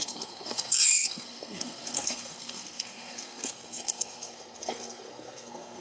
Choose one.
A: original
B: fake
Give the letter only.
B